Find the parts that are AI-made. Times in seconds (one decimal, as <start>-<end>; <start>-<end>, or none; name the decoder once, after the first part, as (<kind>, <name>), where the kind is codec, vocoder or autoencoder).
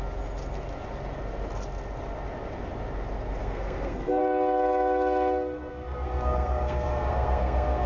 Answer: 3.4-4.2 (codec, SNAC); 5.7-7.9